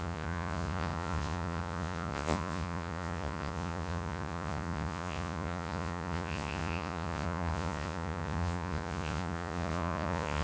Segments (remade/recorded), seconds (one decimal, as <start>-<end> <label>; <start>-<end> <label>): 0.0-10.4 remade